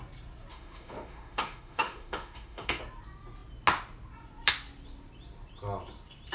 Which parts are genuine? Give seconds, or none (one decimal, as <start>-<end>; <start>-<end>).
0.0-0.5; 2.8-6.3